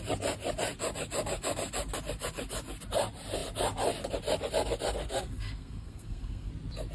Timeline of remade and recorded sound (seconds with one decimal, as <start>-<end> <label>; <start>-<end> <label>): 0.0-5.0 recorded; 5.0-6.5 remade; 6.5-6.9 recorded